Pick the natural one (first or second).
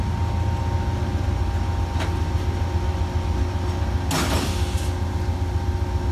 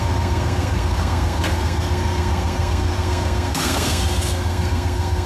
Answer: first